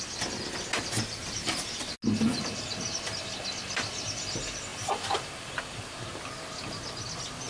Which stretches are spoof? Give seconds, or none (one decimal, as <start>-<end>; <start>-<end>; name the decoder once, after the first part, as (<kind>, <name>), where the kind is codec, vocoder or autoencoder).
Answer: none